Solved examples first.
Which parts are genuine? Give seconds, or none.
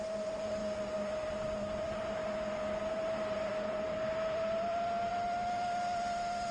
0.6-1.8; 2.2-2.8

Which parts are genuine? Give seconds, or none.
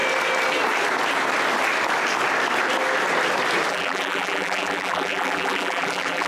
0.0-3.7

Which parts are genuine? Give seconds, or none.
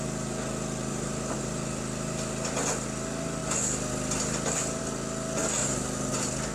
0.0-0.9; 1.5-5.6; 6.1-6.5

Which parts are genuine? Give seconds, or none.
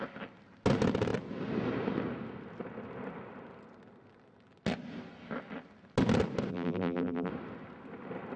0.0-6.5; 7.3-8.4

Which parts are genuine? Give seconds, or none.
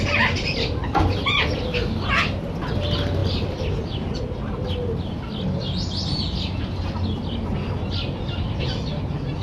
0.0-9.4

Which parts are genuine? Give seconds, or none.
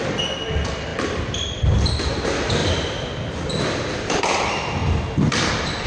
2.6-4.2; 4.8-5.9